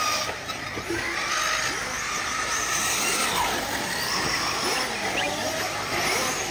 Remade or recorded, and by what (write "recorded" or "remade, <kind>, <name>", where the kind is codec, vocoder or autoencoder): recorded